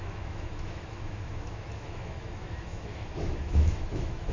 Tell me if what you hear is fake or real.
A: fake